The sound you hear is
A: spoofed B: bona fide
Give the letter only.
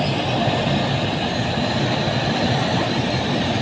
B